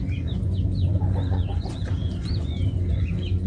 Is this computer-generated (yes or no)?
yes